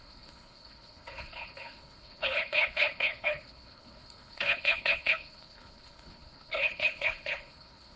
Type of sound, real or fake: fake